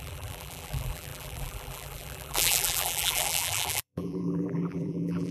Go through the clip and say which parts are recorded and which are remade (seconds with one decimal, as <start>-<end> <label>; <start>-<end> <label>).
0.0-5.3 remade